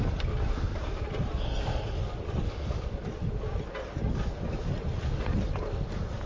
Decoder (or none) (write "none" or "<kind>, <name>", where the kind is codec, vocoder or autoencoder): none